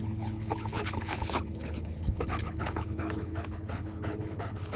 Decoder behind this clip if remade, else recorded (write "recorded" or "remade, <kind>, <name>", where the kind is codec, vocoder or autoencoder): remade, codec, HILCodec